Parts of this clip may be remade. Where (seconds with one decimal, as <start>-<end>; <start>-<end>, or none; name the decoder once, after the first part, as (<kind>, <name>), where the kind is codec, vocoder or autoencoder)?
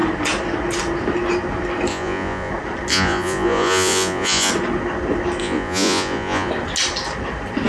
1.9-2.5 (vocoder, Vocos); 2.9-4.5; 5.4-6.5